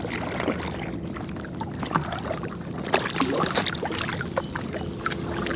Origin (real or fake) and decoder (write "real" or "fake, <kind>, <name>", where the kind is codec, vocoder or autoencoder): real